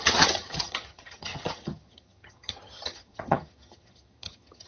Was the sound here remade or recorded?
remade